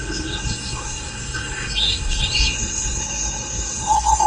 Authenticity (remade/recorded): remade